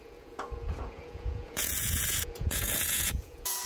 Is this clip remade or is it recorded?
remade